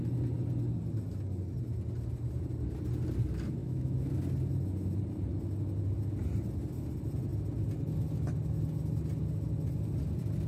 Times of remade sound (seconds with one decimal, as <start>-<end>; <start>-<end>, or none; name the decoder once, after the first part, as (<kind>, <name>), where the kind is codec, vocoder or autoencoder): 3.6-4.1 (autoencoder, DAC-VAE)